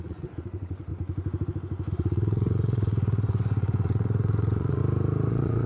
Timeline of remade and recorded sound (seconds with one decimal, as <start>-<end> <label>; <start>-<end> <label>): 0.0-0.9 remade; 0.9-1.9 recorded; 1.9-4.8 remade; 4.8-5.3 recorded; 5.3-5.7 remade